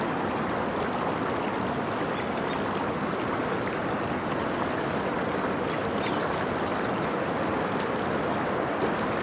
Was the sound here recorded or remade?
recorded